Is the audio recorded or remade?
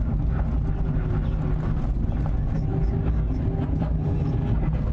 recorded